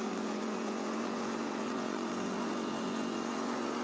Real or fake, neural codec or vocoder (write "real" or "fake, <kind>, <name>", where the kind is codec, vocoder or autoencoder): fake, vocoder, Vocos